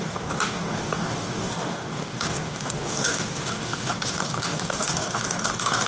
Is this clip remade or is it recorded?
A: remade